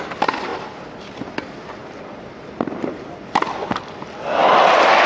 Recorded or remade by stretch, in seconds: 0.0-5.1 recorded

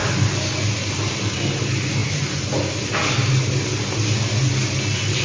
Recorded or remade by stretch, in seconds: 0.0-5.2 recorded